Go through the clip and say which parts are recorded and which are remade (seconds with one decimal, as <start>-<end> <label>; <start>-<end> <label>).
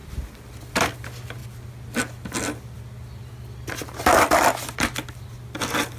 0.0-6.0 recorded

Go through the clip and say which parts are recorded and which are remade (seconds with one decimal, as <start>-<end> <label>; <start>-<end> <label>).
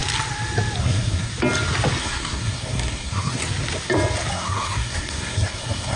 0.0-0.8 recorded; 0.8-1.3 remade; 1.3-2.0 recorded; 2.0-3.4 remade; 3.4-4.3 recorded; 4.3-6.0 remade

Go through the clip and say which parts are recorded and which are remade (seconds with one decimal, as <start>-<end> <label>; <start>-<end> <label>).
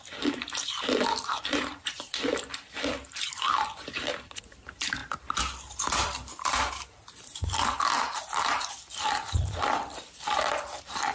0.0-11.1 remade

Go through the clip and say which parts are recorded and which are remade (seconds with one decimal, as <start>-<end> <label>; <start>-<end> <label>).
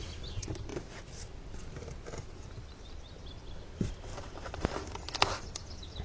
0.0-4.1 recorded; 4.1-5.1 remade; 5.1-6.0 recorded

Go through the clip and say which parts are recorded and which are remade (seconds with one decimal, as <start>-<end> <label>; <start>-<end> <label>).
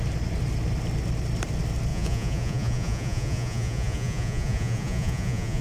0.0-1.9 recorded; 1.9-5.6 remade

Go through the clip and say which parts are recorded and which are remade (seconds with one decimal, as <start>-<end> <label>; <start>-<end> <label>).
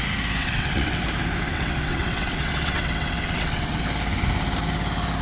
0.0-0.4 recorded; 0.4-1.0 remade; 1.0-1.5 recorded; 1.5-3.8 remade; 3.8-5.2 recorded